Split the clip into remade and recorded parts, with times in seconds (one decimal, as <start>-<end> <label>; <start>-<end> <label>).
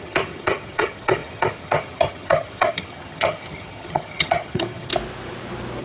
0.0-4.9 remade; 4.9-5.8 recorded